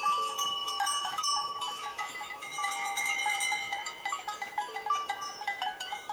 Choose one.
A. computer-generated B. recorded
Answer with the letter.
A